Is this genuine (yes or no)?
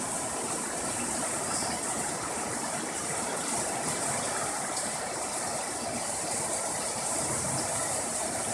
no